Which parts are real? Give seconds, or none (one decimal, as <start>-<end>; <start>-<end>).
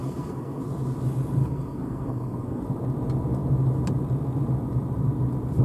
0.6-1.4; 2.6-5.6